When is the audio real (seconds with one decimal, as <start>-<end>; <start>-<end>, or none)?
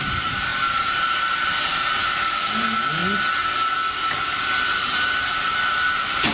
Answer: 3.0-5.5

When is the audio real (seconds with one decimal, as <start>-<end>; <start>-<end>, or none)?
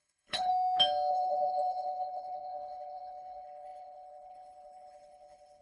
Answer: 0.5-1.1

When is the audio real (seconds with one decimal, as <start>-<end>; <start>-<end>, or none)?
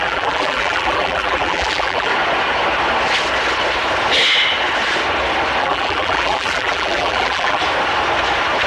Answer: 2.1-5.6; 7.6-8.7